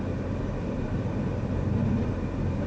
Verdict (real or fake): real